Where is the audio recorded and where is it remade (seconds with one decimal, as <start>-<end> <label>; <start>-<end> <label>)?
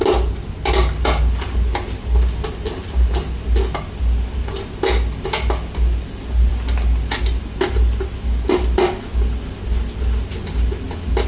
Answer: 0.0-11.3 recorded